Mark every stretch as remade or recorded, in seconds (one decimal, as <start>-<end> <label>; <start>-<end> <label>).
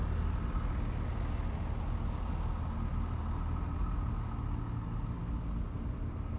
0.0-6.4 recorded